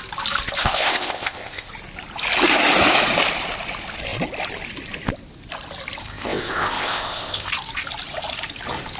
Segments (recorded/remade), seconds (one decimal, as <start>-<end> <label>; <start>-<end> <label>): 0.0-0.6 recorded; 0.6-1.7 remade; 1.7-6.0 recorded; 6.0-7.5 remade; 7.5-9.0 recorded